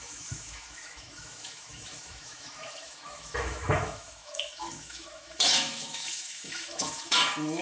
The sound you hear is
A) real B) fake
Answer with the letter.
B